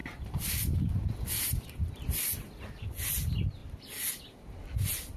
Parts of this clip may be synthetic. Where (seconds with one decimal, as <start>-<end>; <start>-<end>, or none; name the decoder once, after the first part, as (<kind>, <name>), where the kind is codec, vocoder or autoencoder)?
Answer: none